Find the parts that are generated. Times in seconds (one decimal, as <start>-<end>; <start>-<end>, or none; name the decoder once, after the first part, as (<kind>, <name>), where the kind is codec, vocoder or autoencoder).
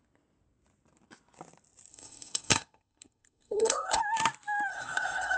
1.9-4.0 (codec, SNAC); 4.7-5.4